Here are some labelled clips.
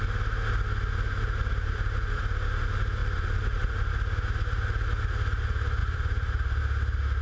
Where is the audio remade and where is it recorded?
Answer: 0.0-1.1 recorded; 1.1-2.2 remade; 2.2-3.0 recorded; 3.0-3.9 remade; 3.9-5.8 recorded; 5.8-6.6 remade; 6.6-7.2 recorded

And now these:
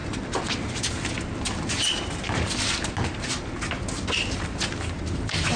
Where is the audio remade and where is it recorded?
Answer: 0.0-5.6 recorded

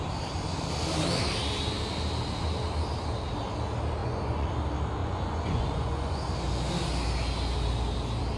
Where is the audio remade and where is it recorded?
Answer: 0.0-4.0 recorded; 4.0-4.5 remade; 4.5-5.0 recorded; 5.0-6.2 remade; 6.2-8.4 recorded

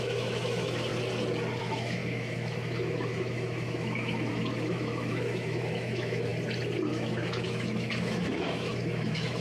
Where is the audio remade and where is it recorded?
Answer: 0.0-0.9 remade; 0.9-1.6 recorded; 1.6-6.3 remade; 6.3-6.9 recorded; 6.9-9.4 remade

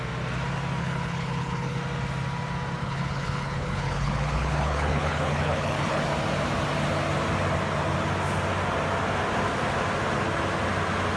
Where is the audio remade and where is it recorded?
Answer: 0.0-0.8 recorded; 0.8-1.8 remade; 1.8-2.8 recorded; 2.8-6.0 remade; 6.0-11.2 recorded